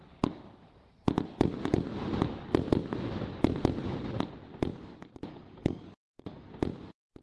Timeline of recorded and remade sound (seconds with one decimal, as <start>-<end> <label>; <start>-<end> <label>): 0.0-5.3 recorded; 5.3-6.5 remade; 6.5-7.2 recorded